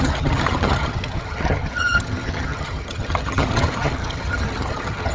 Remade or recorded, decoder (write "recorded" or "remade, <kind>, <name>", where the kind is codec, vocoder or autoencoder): remade, vocoder, HiFi-GAN